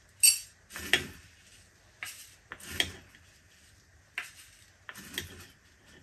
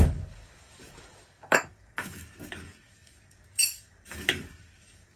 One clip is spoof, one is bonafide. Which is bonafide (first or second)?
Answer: first